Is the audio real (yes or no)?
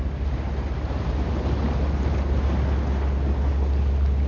yes